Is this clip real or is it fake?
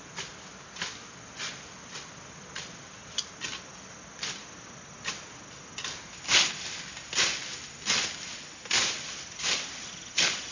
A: real